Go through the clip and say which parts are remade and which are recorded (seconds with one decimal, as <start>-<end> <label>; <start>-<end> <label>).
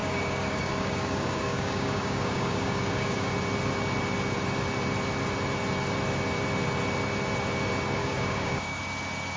0.0-3.3 remade; 3.3-8.0 recorded; 8.0-8.8 remade; 8.8-9.4 recorded